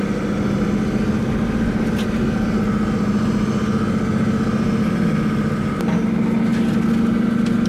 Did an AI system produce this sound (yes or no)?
no